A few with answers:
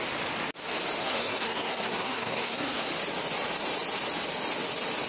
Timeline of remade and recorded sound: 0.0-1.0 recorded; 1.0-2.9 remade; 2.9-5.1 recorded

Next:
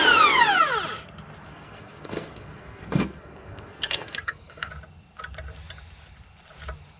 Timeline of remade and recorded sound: 0.0-1.5 recorded; 1.5-4.7 remade; 4.7-7.0 recorded